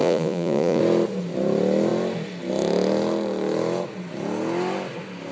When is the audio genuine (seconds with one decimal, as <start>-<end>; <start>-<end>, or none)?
0.8-5.3